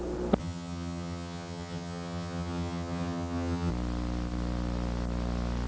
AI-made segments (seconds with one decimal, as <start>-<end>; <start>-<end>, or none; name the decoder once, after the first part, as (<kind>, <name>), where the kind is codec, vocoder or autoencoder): 0.4-3.7 (vocoder, HiFi-GAN)